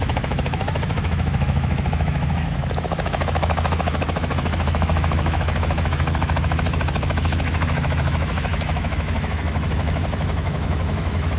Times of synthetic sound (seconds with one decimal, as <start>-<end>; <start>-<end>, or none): 0.0-11.4